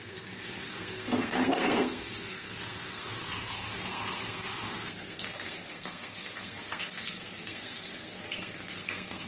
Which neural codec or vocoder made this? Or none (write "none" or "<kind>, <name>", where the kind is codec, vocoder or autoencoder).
codec, SNAC